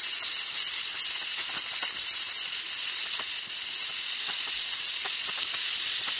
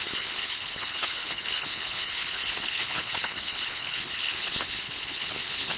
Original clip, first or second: first